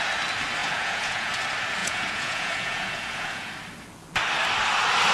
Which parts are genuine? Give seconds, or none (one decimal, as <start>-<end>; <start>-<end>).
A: 0.0-0.6; 1.3-1.8; 3.5-5.1